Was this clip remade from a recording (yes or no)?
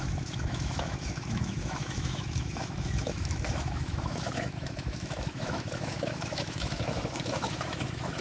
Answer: yes